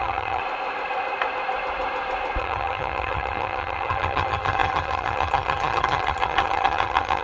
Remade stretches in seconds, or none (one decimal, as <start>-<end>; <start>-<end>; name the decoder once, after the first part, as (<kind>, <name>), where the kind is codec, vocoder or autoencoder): 0.0-0.4 (vocoder, HiFi-GAN); 2.4-7.2